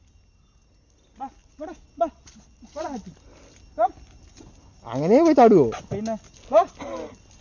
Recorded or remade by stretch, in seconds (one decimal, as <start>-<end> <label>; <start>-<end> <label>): 0.0-1.4 recorded; 1.4-2.6 remade; 2.6-7.4 recorded